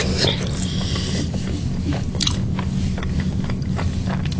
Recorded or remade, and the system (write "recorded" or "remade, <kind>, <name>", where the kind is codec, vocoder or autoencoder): recorded